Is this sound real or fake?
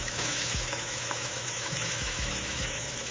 fake